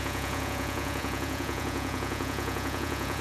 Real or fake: fake